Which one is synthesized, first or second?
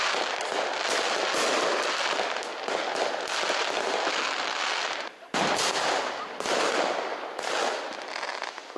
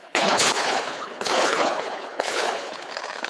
second